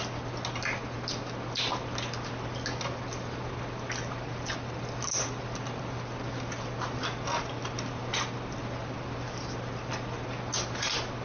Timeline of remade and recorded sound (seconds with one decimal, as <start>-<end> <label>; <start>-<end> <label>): 0.0-11.2 recorded